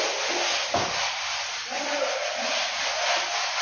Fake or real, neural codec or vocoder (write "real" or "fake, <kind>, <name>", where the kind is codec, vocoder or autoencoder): real